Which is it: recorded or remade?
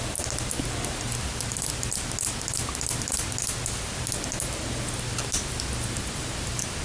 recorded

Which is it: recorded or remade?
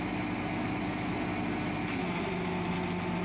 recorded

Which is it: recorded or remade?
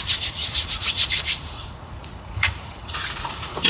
remade